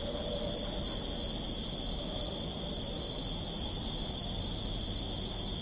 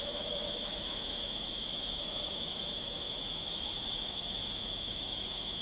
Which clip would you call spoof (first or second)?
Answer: second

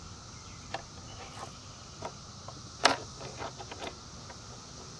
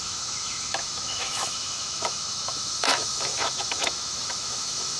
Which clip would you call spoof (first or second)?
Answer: second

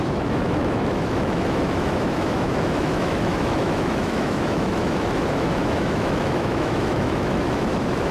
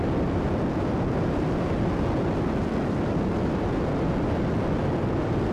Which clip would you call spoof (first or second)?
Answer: first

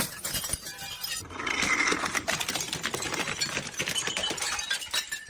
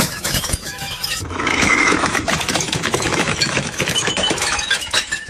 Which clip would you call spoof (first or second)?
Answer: second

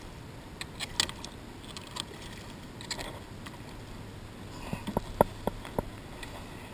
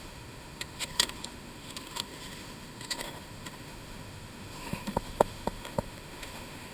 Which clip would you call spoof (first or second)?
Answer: second